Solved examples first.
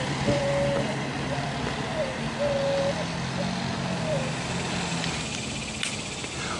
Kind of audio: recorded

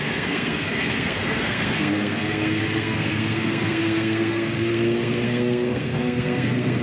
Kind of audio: remade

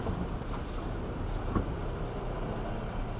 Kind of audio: recorded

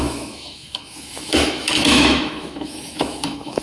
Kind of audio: remade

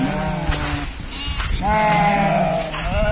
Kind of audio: recorded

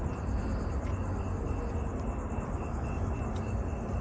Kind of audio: recorded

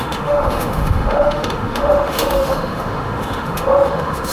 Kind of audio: remade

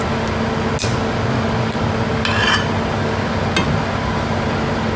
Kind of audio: recorded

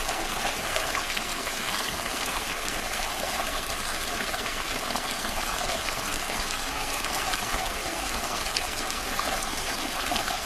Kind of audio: remade